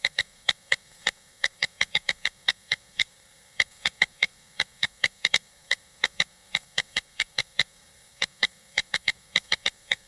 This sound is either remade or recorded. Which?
remade